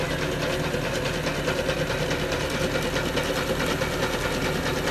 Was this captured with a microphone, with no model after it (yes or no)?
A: yes